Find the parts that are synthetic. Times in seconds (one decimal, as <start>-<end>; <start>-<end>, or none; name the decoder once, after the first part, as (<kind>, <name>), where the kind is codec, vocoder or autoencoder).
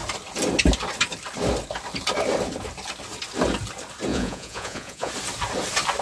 4.1-5.1 (vocoder, Vocos)